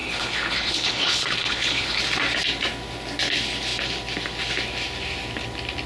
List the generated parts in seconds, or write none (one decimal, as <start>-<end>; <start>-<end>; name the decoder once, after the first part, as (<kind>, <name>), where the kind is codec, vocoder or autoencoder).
0.0-2.0 (codec, HILCodec)